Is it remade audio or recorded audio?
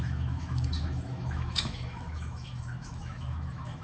remade